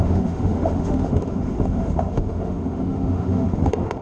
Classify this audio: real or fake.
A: fake